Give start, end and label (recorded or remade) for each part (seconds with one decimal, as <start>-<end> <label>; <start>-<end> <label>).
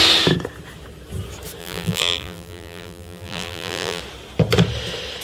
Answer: 0.0-1.6 recorded; 1.6-4.0 remade; 4.0-5.2 recorded